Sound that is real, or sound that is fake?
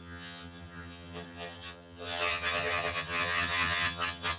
fake